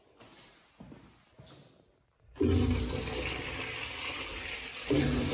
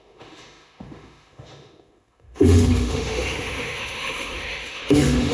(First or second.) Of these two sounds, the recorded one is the first